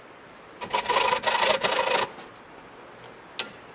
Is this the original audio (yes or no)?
yes